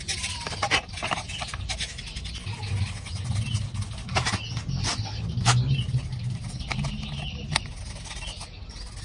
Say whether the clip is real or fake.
real